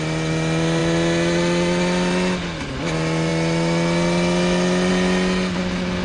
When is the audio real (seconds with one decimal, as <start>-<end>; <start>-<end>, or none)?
0.0-6.0